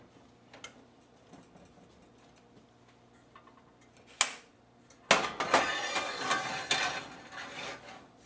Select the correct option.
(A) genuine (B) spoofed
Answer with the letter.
A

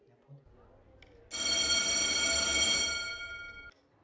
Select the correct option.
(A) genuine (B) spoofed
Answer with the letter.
A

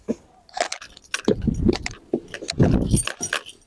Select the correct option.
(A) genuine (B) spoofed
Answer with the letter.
A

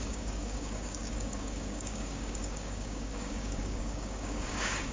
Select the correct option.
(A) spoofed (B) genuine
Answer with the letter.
A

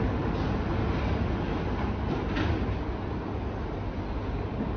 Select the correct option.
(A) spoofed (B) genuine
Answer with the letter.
B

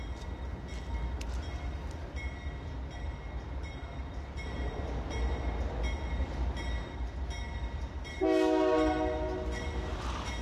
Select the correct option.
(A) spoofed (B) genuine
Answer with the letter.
B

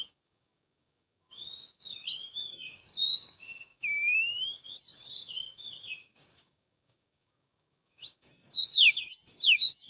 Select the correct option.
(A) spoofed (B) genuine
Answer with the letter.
A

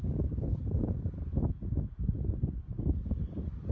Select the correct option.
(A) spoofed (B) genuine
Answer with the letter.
A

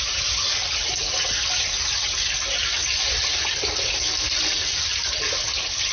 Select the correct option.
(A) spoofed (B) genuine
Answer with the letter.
B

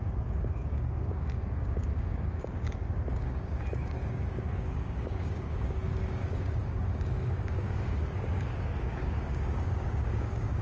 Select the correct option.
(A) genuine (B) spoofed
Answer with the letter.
B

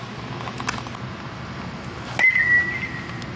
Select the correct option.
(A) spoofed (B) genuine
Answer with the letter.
B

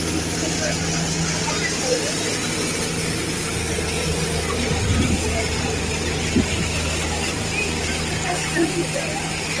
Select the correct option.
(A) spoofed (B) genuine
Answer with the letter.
B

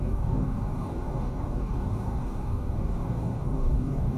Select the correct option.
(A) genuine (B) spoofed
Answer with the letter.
B